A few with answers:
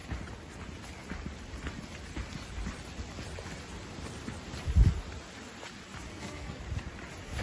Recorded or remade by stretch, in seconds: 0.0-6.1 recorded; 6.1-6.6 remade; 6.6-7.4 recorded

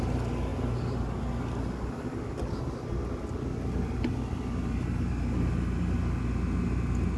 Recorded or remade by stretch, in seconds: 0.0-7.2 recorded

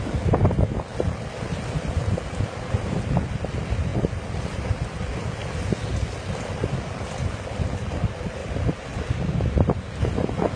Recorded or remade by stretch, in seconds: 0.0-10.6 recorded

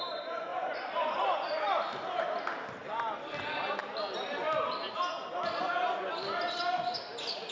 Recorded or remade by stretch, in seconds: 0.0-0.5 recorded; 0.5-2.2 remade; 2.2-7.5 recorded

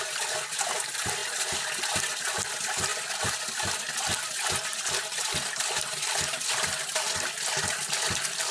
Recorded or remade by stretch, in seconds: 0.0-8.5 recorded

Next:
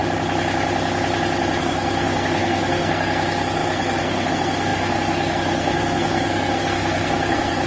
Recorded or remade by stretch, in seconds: 0.0-1.6 recorded; 1.6-7.7 remade